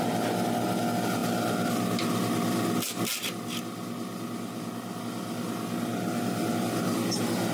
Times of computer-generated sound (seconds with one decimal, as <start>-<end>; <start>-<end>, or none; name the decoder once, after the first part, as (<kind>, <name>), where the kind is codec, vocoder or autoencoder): none